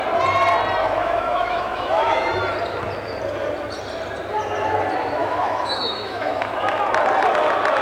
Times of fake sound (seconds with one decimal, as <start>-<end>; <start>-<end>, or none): 0.8-2.3; 5.2-6.8